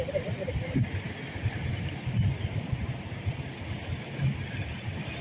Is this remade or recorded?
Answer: recorded